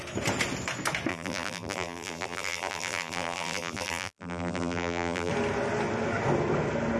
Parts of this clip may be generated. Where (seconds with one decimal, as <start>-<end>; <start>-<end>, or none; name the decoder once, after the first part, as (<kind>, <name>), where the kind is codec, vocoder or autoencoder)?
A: 1.1-5.3 (vocoder, BigVGAN v2)